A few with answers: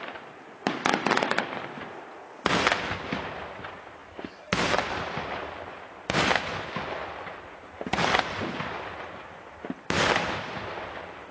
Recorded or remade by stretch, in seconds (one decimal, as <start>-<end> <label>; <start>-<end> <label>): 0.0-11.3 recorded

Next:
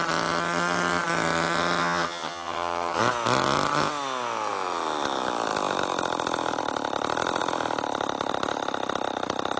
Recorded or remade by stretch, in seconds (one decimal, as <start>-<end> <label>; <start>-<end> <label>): 0.0-1.8 recorded; 1.8-3.0 remade; 3.0-9.6 recorded

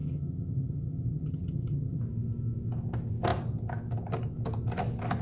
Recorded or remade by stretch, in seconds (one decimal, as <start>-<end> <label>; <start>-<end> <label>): 0.0-2.0 remade; 2.0-5.2 recorded

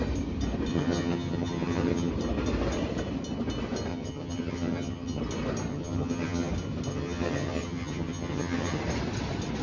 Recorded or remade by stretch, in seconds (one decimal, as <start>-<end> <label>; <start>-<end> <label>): 0.0-0.7 recorded; 0.7-2.1 remade; 2.1-3.9 recorded; 3.9-5.2 remade; 5.2-5.7 recorded; 5.7-6.5 remade; 6.5-6.9 recorded; 6.9-8.8 remade; 8.8-9.6 recorded

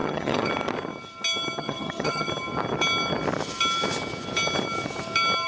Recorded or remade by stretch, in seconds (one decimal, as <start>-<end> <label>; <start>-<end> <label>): 0.0-0.5 remade; 0.5-1.6 recorded; 1.6-2.3 remade; 2.3-5.5 recorded

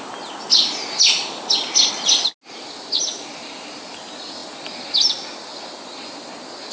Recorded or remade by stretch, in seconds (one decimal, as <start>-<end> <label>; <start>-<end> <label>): 0.0-6.7 recorded

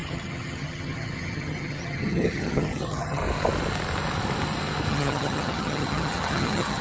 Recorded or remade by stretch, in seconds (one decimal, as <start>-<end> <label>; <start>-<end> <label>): 0.0-3.2 remade; 3.2-4.9 recorded; 4.9-6.8 remade

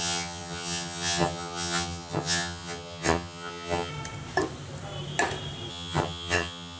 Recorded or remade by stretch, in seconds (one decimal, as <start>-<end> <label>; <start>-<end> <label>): 0.0-3.9 remade; 3.9-5.7 recorded; 5.7-6.8 remade